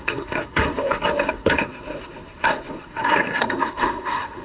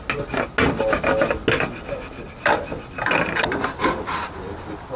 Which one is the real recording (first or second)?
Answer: second